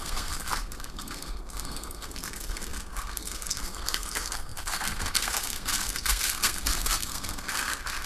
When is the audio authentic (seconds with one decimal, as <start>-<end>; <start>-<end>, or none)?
none